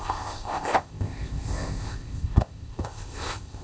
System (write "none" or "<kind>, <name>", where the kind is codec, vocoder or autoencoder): codec, ZipCodec